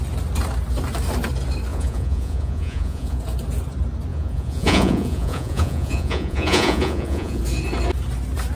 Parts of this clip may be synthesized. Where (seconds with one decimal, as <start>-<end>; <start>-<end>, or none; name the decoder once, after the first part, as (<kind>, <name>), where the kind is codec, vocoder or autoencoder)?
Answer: 1.7-3.2 (vocoder, Vocos); 4.1-7.4